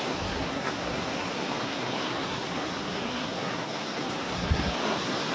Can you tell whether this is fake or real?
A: fake